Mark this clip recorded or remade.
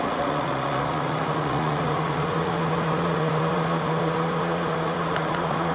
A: remade